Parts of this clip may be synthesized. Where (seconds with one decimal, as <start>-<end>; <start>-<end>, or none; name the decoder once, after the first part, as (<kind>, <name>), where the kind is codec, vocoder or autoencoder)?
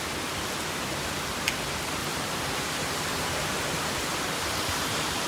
2.0-5.3 (vocoder, BigVGAN v2)